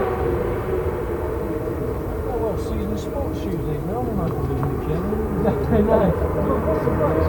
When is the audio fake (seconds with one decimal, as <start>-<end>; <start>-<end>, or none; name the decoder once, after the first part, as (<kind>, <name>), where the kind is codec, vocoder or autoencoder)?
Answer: 0.0-1.8 (vocoder, BigVGAN v2); 4.2-5.2; 6.0-7.3